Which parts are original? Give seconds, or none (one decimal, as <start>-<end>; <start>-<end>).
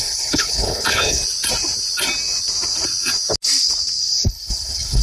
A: 1.2-4.0